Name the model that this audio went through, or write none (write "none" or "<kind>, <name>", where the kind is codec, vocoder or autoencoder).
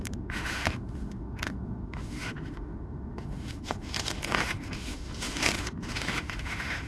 autoencoder, DAC-VAE